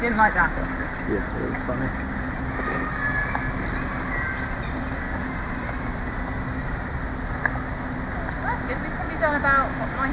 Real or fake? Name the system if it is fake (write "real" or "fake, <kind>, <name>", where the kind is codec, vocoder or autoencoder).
real